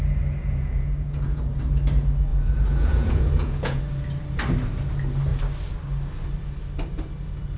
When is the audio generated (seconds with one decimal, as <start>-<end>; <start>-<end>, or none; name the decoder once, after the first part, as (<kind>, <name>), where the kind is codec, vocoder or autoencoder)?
0.4-1.6 (vocoder, Vocos); 2.3-3.8